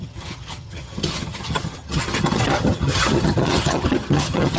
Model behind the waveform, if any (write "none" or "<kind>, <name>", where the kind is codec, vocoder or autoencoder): vocoder, HiFi-GAN